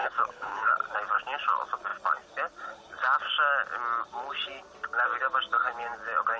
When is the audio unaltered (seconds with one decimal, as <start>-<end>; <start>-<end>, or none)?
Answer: 0.7-6.4